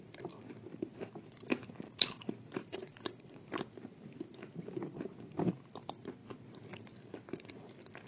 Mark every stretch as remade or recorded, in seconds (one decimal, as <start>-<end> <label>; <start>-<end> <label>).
0.0-2.6 recorded; 2.6-3.4 remade; 3.4-8.1 recorded